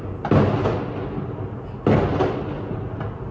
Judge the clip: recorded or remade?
recorded